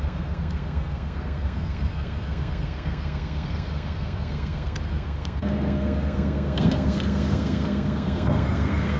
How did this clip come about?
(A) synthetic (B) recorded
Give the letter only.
A